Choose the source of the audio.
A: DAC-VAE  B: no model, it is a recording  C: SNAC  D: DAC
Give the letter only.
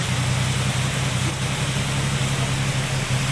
B